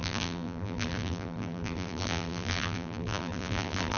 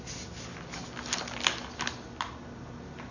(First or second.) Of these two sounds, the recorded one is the second